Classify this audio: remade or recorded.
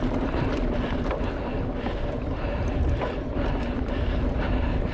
recorded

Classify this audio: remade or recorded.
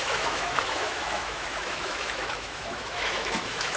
remade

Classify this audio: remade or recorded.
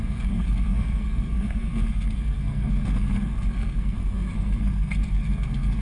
remade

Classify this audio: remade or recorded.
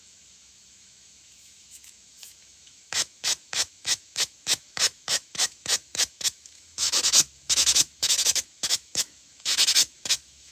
remade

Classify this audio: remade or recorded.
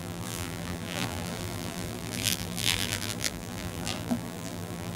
remade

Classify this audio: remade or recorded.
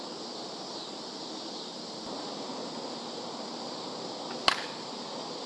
recorded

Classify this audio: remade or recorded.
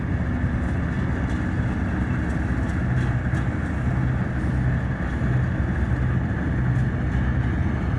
recorded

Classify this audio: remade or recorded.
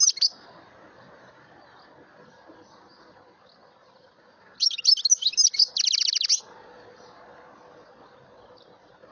recorded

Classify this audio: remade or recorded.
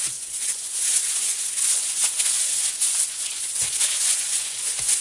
remade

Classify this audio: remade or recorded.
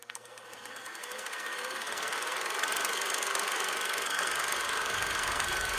remade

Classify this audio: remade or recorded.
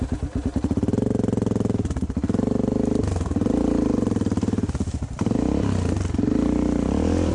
recorded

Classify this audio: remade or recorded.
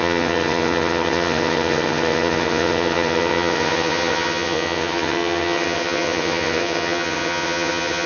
remade